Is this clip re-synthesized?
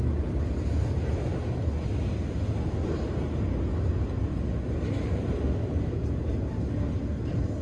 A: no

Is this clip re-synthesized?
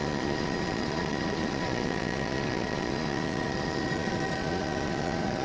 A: yes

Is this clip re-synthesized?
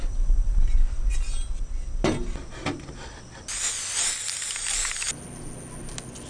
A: no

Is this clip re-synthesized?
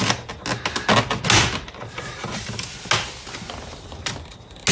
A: no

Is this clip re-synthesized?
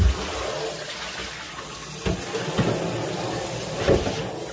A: no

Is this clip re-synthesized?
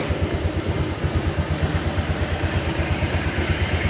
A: no